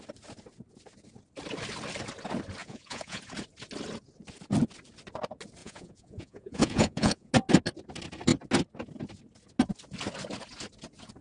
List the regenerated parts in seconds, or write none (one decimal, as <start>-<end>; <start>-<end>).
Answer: 2.6-3.2; 5.6-7.3